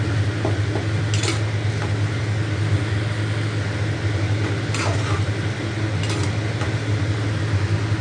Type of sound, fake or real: real